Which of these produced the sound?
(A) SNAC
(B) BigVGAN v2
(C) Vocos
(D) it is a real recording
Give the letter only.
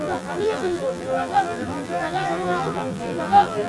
B